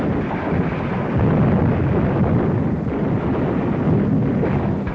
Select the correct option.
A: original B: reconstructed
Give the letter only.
A